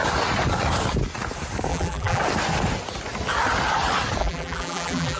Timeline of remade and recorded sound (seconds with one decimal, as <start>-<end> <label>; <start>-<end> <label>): 0.0-1.7 recorded; 1.7-2.2 remade; 2.2-4.2 recorded; 4.2-5.2 remade